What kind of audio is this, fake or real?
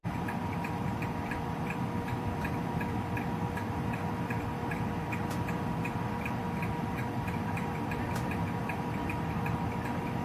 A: fake